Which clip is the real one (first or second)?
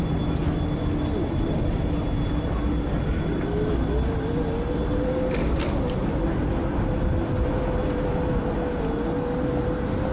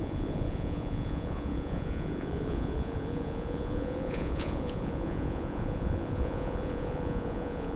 first